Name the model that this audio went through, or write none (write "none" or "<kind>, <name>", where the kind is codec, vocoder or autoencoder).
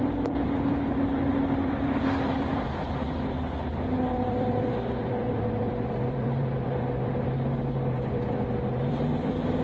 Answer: vocoder, BigVGAN v2